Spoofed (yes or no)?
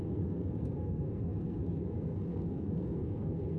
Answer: yes